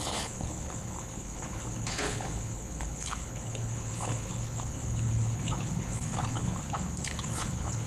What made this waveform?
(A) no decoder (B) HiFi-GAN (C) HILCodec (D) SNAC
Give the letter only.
C